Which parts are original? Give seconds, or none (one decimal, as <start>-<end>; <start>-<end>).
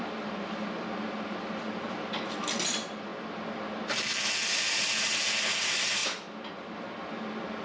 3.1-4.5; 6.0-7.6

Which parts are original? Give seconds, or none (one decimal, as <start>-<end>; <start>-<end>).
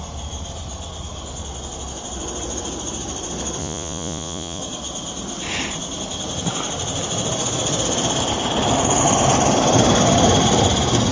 0.0-3.6; 4.6-11.1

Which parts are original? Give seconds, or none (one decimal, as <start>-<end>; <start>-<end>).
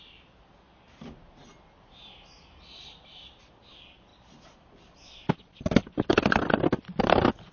0.0-4.1; 6.2-7.5